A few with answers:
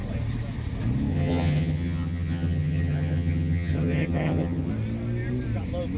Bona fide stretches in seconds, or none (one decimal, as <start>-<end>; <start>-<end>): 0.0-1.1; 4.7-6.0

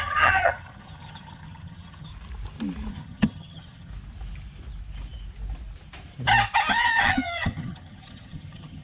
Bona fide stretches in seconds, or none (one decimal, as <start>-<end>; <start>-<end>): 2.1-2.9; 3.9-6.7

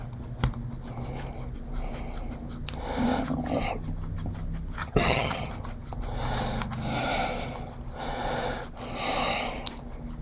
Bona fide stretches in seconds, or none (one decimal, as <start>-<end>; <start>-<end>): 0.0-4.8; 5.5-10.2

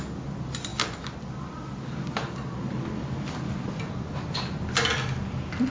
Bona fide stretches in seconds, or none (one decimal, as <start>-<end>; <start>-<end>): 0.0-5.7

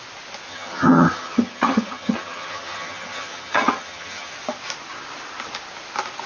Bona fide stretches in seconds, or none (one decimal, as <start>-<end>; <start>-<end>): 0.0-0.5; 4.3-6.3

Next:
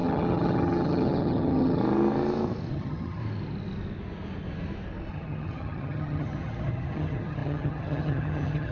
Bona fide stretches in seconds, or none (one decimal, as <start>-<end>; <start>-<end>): 1.8-2.7; 3.2-5.1

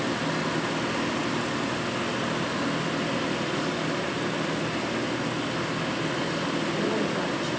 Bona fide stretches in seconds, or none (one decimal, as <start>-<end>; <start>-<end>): 0.0-7.6

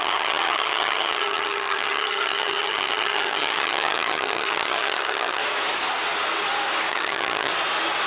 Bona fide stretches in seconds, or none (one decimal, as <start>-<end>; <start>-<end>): 5.4-6.9; 7.5-8.1